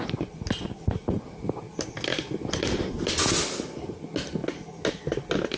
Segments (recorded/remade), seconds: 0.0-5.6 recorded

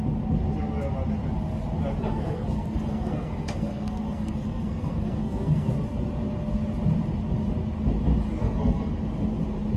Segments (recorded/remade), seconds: 0.0-2.0 recorded; 2.0-5.7 remade; 5.7-8.4 recorded; 8.4-8.9 remade; 8.9-9.8 recorded

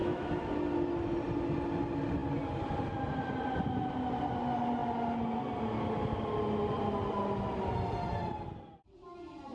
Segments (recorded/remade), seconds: 0.0-0.5 remade; 0.5-9.5 recorded

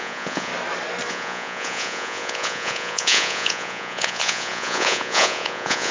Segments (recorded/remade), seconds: 0.0-0.5 remade; 0.5-1.1 recorded; 1.1-5.9 remade

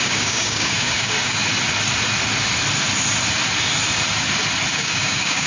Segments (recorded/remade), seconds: 0.0-1.4 remade; 1.4-4.7 recorded; 4.7-5.5 remade